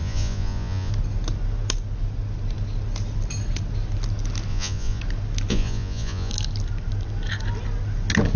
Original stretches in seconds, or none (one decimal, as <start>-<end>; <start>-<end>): 0.9-4.5; 5.0-5.5; 6.3-8.4